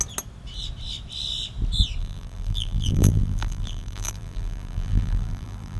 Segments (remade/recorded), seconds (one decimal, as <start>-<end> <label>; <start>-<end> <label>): 0.0-2.0 recorded; 2.0-5.8 remade